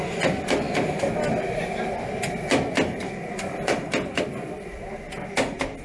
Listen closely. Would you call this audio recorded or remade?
recorded